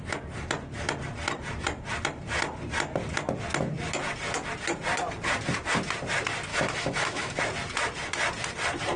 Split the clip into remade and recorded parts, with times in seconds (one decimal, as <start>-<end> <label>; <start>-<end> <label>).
0.0-6.5 recorded; 6.5-7.4 remade; 7.4-9.0 recorded